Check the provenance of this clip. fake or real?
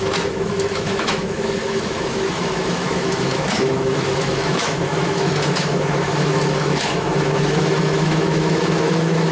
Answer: fake